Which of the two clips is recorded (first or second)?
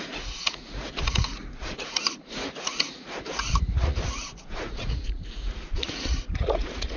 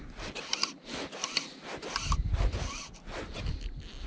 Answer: second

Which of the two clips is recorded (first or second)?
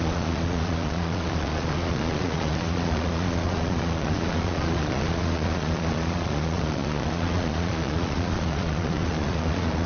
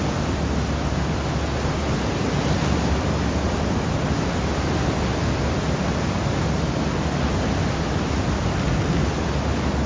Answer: second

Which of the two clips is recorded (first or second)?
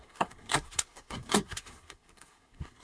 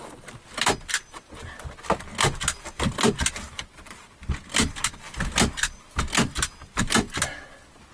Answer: second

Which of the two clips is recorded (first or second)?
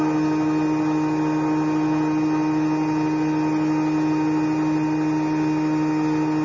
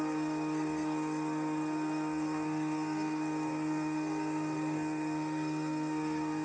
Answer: first